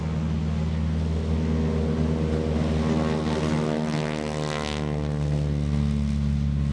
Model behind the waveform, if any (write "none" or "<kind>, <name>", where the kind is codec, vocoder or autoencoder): none